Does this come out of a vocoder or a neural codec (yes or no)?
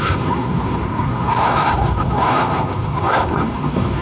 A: yes